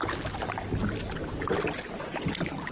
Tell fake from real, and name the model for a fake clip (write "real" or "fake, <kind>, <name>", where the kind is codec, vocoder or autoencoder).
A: real